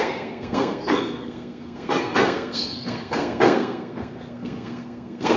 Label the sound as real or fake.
fake